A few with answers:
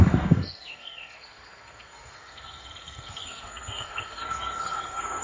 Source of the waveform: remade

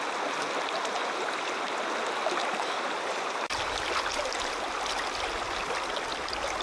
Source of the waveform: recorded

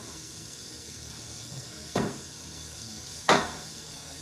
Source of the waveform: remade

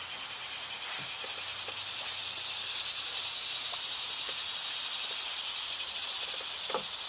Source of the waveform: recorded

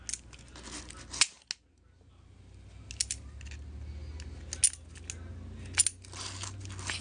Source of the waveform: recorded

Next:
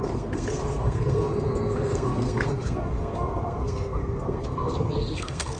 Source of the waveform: remade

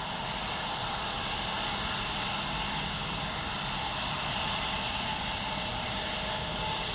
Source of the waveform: recorded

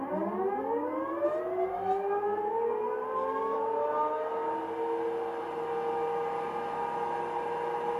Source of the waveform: recorded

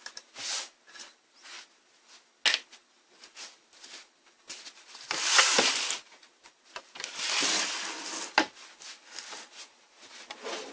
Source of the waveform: recorded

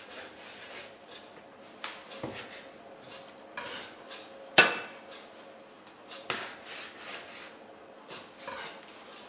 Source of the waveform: recorded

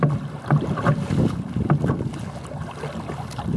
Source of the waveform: recorded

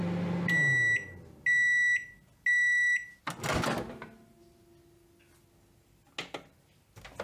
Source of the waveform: recorded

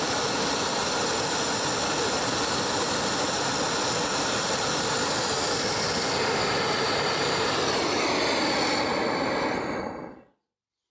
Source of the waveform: recorded